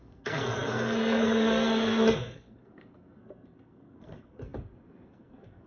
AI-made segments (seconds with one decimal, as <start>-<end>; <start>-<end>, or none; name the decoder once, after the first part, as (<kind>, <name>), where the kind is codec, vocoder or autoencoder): 0.0-5.7 (codec, SNAC)